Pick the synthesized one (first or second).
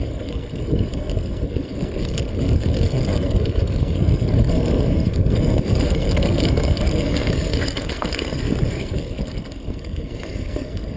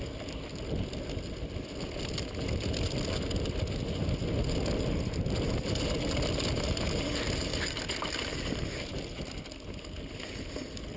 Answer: first